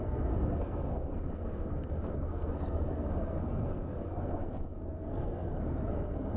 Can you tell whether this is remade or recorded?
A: remade